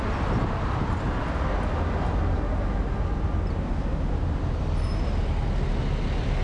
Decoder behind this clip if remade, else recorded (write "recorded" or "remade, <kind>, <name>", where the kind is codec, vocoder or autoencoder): recorded